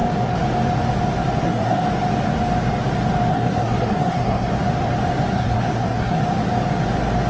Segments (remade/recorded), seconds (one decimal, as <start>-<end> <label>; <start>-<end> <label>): 0.0-1.4 recorded; 1.4-1.9 remade; 1.9-3.3 recorded; 3.3-4.5 remade; 4.5-5.3 recorded; 5.3-6.2 remade; 6.2-7.3 recorded